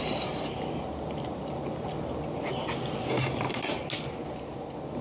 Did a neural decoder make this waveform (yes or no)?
no